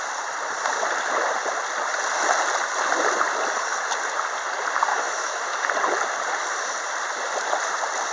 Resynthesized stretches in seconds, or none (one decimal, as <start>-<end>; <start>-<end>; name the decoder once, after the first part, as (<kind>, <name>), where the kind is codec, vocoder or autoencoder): 4.9-5.7 (autoencoder, DAC-VAE)